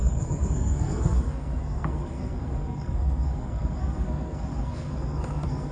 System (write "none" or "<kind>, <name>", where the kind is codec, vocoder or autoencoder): codec, SNAC